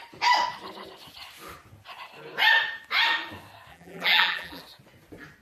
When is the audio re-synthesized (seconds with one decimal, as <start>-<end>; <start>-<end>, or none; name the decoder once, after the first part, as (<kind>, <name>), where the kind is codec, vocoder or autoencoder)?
3.7-4.6 (vocoder, BigVGAN v2)